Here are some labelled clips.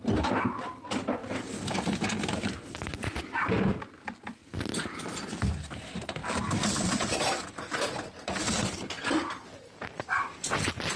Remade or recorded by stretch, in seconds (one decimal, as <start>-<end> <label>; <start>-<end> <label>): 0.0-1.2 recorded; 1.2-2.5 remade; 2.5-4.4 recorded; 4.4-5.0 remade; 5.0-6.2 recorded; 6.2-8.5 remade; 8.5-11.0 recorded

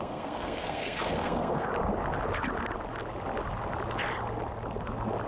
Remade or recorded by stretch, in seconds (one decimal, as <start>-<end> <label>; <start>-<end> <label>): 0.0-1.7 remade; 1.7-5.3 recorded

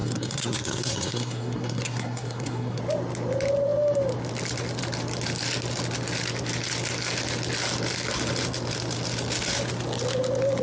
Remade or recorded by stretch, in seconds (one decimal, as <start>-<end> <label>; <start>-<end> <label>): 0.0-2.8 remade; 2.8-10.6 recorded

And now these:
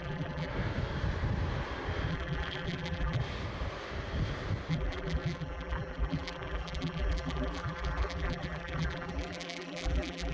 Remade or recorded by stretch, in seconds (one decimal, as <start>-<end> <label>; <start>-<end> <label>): 0.0-0.5 remade; 0.5-2.1 recorded; 2.1-3.2 remade; 3.2-4.7 recorded; 4.7-10.3 remade